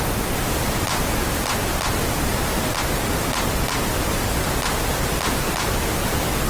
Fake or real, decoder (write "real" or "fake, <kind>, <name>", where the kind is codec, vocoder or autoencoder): real